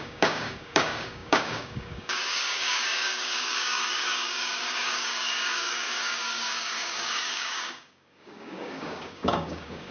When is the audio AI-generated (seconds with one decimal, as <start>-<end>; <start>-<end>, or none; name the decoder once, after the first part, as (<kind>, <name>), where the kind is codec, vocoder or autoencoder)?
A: 0.0-9.9 (codec, DAC)